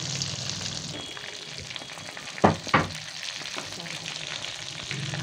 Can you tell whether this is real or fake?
real